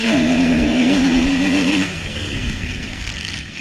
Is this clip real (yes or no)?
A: no